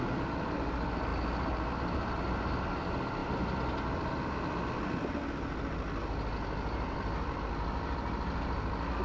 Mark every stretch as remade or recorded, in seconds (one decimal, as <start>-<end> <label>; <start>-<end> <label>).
0.0-9.0 recorded

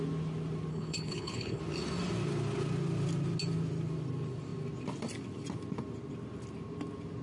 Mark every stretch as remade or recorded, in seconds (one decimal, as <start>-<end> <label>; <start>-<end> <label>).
0.0-0.7 recorded; 0.7-1.6 remade; 1.6-7.2 recorded

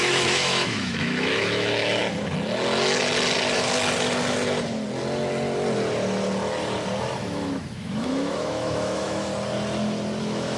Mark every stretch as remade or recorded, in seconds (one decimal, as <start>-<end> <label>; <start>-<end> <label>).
0.0-2.0 remade; 2.0-7.2 recorded; 7.2-9.3 remade; 9.3-10.2 recorded; 10.2-10.6 remade

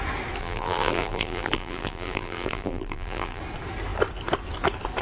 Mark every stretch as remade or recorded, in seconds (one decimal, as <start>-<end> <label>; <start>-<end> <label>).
0.0-0.4 recorded; 0.4-3.4 remade; 3.4-5.0 recorded

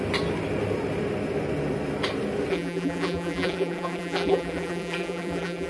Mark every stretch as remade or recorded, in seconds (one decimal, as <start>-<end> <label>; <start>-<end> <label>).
0.0-2.5 recorded; 2.5-5.7 remade